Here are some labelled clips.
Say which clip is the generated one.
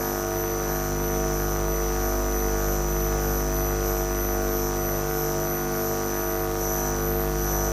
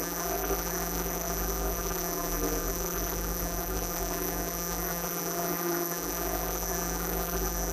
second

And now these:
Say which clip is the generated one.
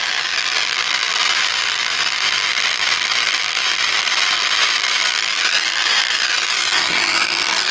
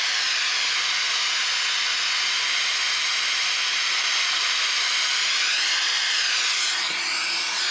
first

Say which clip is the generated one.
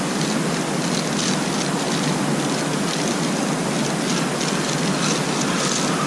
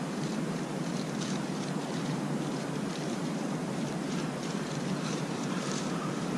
second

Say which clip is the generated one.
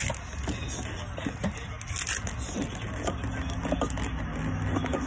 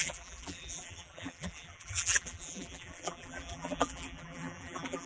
second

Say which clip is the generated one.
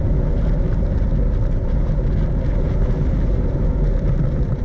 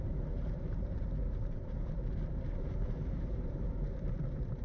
second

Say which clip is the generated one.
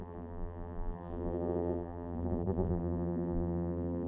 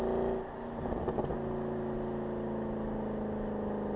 first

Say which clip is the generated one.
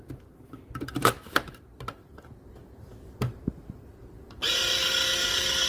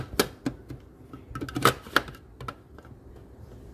first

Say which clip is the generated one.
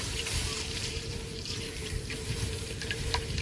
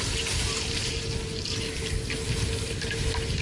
first